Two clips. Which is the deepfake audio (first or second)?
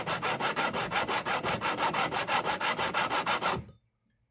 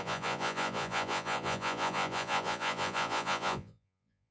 second